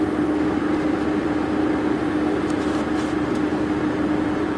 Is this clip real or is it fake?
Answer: real